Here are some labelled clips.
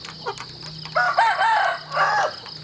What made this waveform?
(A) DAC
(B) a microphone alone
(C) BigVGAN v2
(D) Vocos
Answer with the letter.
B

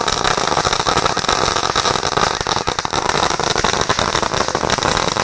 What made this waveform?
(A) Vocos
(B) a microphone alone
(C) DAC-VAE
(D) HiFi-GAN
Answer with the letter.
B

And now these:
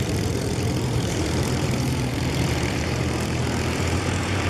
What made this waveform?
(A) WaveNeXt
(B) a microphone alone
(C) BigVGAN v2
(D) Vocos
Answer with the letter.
C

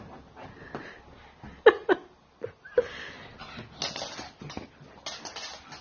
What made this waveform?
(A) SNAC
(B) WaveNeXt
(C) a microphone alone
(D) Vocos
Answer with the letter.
C